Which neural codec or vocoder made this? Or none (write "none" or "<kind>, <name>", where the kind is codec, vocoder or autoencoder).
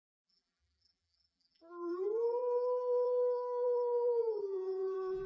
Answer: vocoder, BigVGAN v2